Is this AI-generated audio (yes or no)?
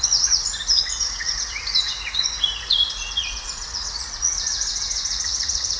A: yes